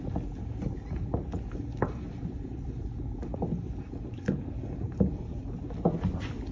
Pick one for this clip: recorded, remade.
recorded